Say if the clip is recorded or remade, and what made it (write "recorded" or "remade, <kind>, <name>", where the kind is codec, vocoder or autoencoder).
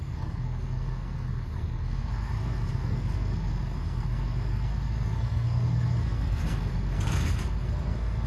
remade, codec, SNAC